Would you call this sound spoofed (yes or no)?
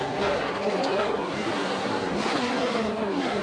yes